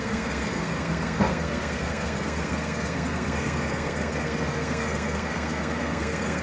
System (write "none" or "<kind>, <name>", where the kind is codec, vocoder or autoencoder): codec, SNAC